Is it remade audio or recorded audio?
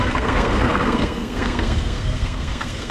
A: remade